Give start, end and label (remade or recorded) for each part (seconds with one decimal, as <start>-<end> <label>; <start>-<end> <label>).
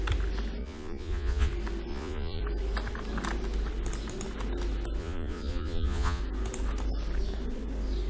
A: 0.0-0.6 recorded; 0.6-1.5 remade; 1.5-1.9 recorded; 1.9-2.4 remade; 2.4-5.0 recorded; 5.0-6.2 remade; 6.2-8.1 recorded